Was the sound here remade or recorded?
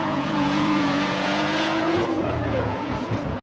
remade